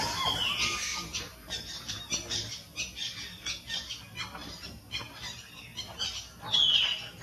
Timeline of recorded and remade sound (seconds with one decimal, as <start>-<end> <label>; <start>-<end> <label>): 0.0-0.9 recorded; 0.9-2.0 remade; 2.0-4.4 recorded; 4.4-5.0 remade; 5.0-7.2 recorded